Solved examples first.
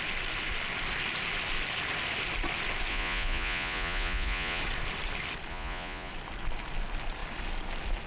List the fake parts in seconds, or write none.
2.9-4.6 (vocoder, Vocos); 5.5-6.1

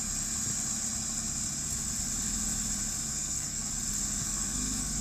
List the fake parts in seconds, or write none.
3.1-3.7 (codec, SNAC); 4.2-5.0

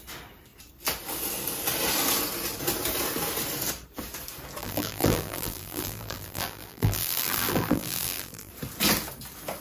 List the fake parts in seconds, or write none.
4.6-8.5 (vocoder, BigVGAN v2)

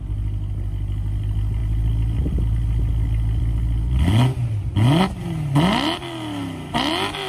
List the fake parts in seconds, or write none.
none

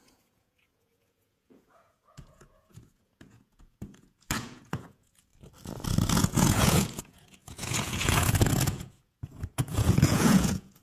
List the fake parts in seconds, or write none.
0.0-5.3 (vocoder, Vocos); 6.2-10.8